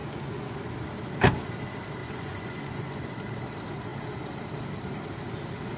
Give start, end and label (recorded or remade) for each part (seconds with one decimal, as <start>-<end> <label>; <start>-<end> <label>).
0.0-0.6 remade; 0.6-2.0 recorded; 2.0-3.0 remade; 3.0-5.8 recorded